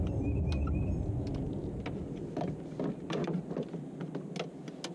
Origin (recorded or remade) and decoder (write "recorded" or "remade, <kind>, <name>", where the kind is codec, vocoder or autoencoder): recorded